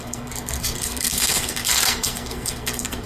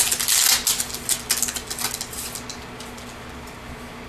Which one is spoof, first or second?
first